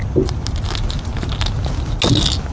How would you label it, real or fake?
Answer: real